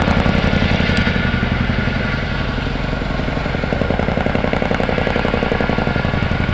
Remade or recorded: recorded